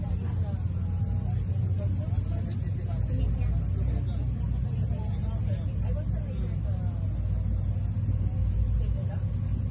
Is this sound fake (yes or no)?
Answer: no